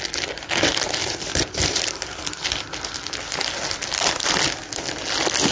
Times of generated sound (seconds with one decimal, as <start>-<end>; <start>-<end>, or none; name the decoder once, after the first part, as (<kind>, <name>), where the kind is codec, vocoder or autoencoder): 1.0-4.3 (vocoder, BigVGAN v2)